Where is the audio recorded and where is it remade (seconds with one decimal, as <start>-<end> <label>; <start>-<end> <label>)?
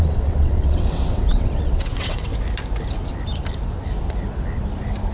0.0-2.3 remade; 2.3-5.1 recorded